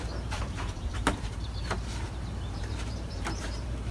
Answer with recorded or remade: remade